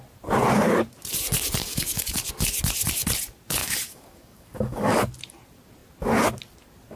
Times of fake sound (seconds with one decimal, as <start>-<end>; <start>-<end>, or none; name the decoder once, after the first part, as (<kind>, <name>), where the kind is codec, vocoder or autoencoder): 1.6-2.3 (codec, DAC); 3.6-5.1